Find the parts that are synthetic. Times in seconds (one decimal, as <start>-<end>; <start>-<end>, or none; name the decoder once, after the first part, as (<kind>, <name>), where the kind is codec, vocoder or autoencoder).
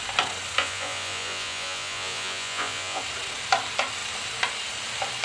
0.6-3.0 (vocoder, Vocos)